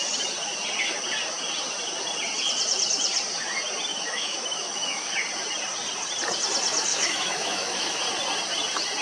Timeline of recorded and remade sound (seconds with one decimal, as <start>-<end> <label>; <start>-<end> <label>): 0.0-3.9 recorded; 3.9-5.1 remade; 5.1-6.9 recorded; 6.9-8.0 remade; 8.0-9.0 recorded